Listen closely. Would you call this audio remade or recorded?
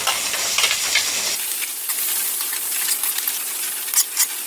recorded